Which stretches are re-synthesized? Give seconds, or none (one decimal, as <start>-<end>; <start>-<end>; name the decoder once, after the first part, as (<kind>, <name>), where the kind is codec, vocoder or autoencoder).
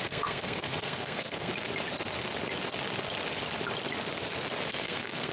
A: 0.0-1.5 (codec, SNAC); 4.7-5.3